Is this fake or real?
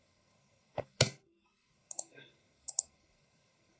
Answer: fake